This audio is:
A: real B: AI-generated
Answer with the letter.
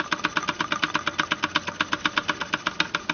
A